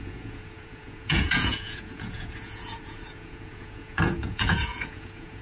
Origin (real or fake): fake